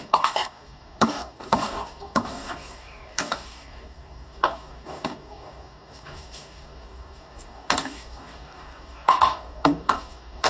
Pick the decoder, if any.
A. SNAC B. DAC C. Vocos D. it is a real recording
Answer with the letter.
B